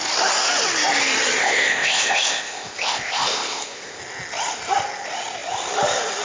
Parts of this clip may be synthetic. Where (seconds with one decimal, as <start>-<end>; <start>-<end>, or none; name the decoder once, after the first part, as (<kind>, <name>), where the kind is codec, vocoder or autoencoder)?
1.4-4.0 (codec, ZipCodec)